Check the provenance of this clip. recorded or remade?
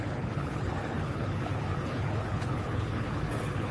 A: remade